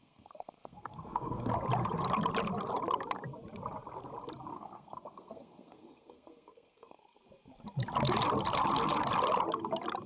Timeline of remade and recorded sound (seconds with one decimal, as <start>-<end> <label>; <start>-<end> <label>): 0.0-1.5 remade; 1.5-4.5 recorded; 4.5-7.2 remade; 7.2-10.1 recorded